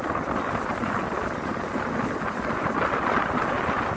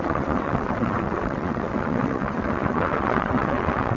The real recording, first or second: first